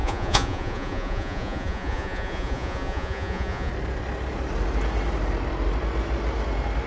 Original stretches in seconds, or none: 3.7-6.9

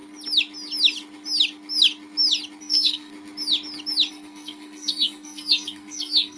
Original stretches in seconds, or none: 0.0-2.6; 3.1-4.1

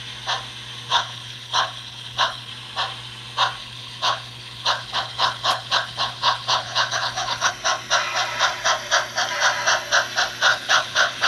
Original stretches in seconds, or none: 0.0-0.9; 2.5-3.6; 7.5-10.5

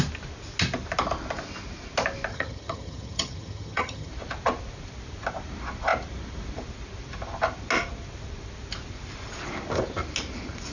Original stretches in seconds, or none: 0.0-2.3; 4.1-10.7

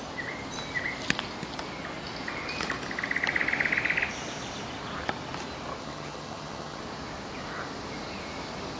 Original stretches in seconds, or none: 0.0-5.8; 6.8-8.8

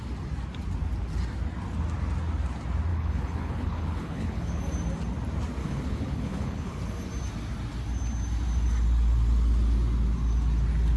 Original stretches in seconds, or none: 0.0-2.9; 4.6-5.6; 6.8-11.0

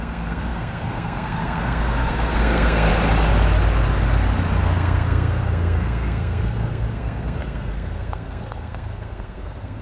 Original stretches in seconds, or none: 2.9-4.6

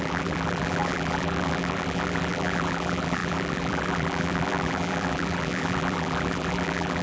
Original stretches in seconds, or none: none